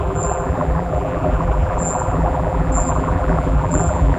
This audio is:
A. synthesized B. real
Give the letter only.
A